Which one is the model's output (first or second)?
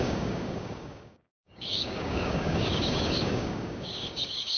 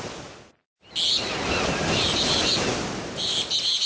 first